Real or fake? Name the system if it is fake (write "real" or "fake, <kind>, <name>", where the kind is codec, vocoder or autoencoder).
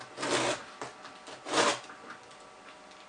real